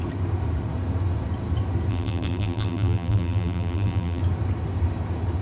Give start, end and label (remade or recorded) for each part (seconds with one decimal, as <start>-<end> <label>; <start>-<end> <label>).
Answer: 0.0-1.9 recorded; 1.9-4.2 remade; 4.2-5.4 recorded